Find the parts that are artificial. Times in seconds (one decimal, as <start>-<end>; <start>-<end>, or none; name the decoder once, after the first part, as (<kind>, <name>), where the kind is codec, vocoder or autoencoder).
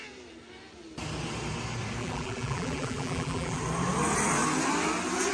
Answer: 2.0-3.6 (vocoder, BigVGAN v2)